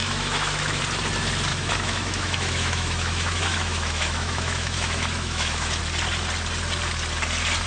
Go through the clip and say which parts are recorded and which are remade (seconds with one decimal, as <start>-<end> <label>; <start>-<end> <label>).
0.0-0.8 remade; 0.8-1.5 recorded; 1.5-5.8 remade; 5.8-7.7 recorded